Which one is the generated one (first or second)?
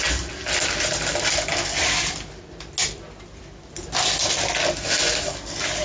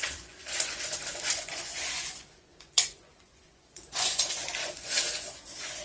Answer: second